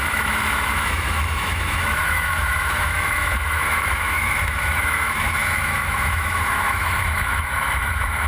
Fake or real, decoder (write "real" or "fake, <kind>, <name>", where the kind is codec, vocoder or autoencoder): fake, autoencoder, DAC-VAE